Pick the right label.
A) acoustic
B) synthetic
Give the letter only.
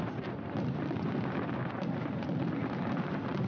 A